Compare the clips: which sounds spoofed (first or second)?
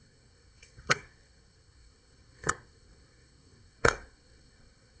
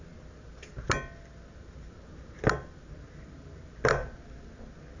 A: first